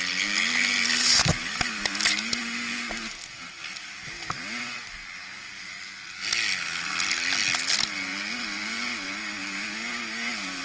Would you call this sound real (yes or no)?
yes